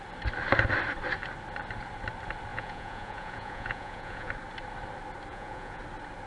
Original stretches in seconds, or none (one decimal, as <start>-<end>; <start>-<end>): 0.0-2.5; 4.3-5.3; 5.8-6.3